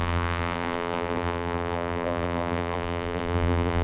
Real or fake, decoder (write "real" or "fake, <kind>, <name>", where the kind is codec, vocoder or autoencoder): fake, vocoder, BigVGAN v2